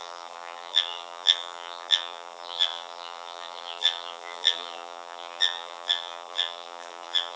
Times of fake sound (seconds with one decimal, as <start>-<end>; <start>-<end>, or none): 0.0-7.4